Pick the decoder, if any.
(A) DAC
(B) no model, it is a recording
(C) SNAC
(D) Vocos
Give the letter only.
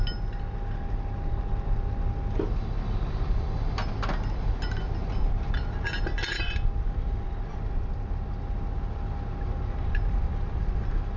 B